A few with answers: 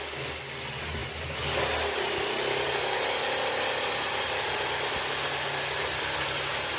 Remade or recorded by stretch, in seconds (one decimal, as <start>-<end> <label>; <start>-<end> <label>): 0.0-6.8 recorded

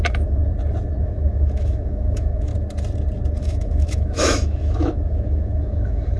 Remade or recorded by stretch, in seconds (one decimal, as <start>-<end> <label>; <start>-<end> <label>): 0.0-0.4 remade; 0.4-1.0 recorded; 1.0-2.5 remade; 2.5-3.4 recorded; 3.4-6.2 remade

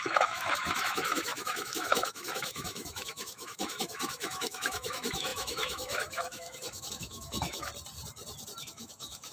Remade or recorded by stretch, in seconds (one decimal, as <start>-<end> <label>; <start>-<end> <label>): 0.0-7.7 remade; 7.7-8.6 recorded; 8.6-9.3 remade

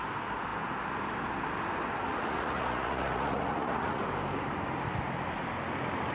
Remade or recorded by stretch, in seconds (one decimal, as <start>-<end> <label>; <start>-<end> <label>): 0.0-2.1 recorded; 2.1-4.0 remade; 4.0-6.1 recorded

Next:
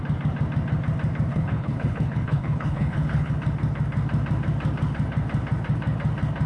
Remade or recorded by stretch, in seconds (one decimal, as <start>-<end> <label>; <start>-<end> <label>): 0.0-1.3 recorded; 1.3-3.3 remade; 3.3-6.5 recorded